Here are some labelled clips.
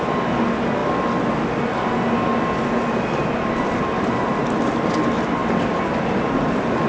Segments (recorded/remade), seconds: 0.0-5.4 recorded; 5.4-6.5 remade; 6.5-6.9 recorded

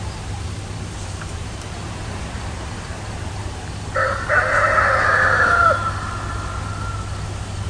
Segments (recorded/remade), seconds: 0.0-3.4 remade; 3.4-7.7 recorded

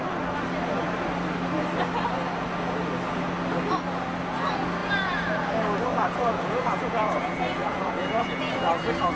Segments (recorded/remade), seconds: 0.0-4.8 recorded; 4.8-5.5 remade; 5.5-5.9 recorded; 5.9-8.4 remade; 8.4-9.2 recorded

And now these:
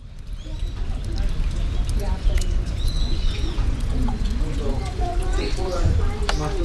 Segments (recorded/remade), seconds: 0.0-2.0 recorded; 2.0-6.0 remade; 6.0-6.6 recorded

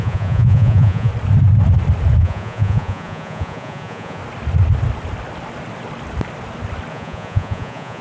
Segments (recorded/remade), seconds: 0.0-1.1 remade; 1.1-2.2 recorded; 2.2-4.2 remade; 4.2-6.9 recorded; 6.9-8.0 remade

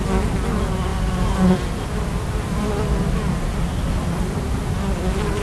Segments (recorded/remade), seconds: 0.0-5.4 recorded